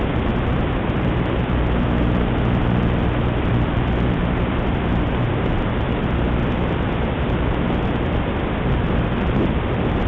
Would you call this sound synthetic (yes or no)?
no